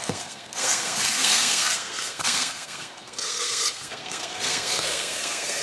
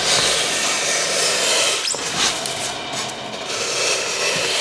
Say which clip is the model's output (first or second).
first